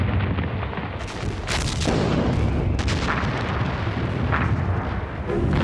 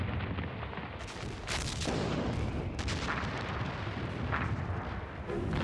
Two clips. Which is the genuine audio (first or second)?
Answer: first